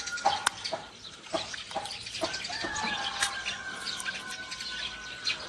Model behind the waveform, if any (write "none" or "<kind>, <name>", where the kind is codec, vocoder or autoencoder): none